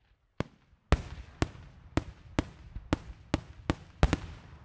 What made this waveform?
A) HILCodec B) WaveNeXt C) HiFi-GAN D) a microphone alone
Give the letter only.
D